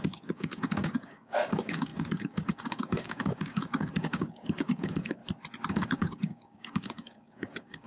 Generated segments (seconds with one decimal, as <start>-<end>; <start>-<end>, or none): 0.0-5.2; 5.7-7.9